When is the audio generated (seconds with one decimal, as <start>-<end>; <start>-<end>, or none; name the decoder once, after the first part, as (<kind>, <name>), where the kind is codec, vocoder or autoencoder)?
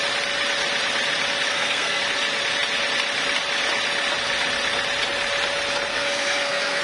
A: 1.5-2.0 (codec, SNAC); 5.9-6.8